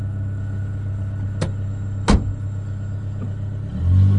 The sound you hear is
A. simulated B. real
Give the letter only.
B